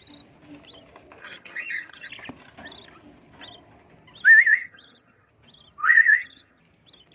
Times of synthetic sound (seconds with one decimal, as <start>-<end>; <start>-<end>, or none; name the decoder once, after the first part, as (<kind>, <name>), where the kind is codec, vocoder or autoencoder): 1.2-2.1 (vocoder, HiFi-GAN); 4.5-5.3; 5.8-6.6